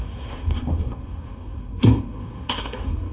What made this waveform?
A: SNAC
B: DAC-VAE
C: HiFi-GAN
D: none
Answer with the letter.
A